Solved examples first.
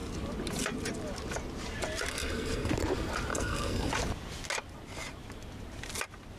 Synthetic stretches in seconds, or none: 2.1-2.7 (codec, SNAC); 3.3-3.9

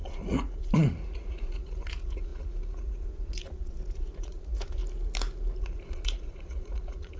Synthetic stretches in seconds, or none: 0.0-4.8 (vocoder, Vocos); 5.6-7.2